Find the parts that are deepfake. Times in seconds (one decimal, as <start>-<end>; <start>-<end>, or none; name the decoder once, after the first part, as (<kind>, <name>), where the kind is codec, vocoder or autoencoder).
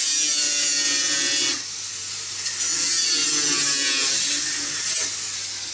none